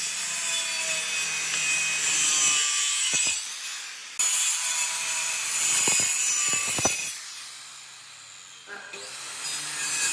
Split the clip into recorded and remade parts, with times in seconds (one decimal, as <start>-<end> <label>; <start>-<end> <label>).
0.0-10.1 recorded